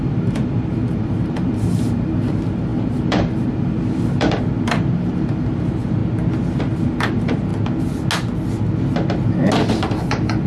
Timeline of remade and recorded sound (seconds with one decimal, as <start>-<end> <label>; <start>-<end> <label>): 0.0-6.0 remade; 6.0-6.6 recorded; 6.6-7.5 remade; 7.5-9.7 recorded; 9.7-10.5 remade